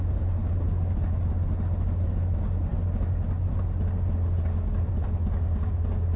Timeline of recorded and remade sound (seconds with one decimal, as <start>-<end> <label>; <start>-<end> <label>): 0.0-6.2 recorded